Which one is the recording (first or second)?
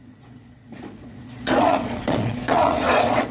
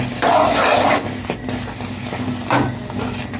second